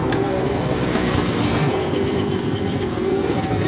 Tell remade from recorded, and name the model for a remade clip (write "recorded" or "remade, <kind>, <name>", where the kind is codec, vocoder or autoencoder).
remade, codec, SNAC